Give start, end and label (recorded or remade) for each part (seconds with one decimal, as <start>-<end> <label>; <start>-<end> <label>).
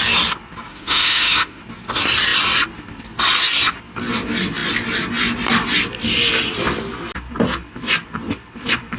0.0-0.7 recorded; 0.7-1.6 remade; 1.6-9.0 recorded